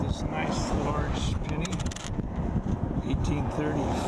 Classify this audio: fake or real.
real